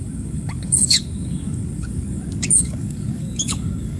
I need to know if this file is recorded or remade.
remade